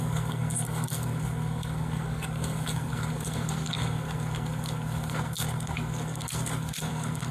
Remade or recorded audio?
remade